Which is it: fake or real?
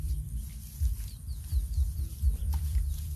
fake